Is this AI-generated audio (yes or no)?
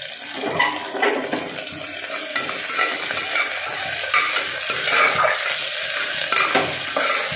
no